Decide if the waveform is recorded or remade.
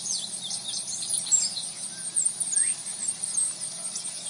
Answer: remade